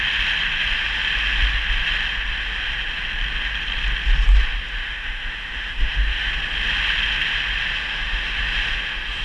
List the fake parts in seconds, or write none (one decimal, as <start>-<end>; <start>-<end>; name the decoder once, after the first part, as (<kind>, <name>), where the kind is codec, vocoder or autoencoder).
4.8-6.3 (autoencoder, DAC-VAE); 7.9-8.4